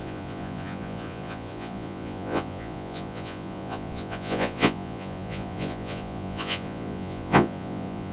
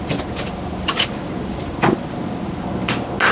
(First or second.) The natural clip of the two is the second